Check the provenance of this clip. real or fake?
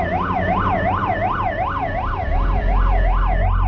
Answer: real